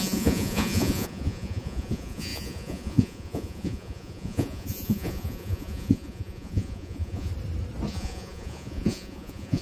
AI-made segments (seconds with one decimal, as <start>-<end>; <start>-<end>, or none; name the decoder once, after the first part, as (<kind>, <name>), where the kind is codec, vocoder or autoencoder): 0.0-7.3 (vocoder, Vocos); 7.9-9.6